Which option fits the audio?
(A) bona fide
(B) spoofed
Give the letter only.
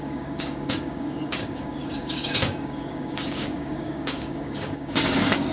B